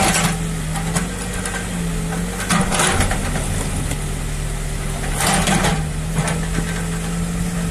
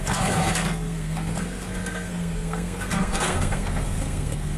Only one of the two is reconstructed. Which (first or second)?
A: second